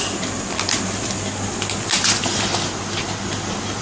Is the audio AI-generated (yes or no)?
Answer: no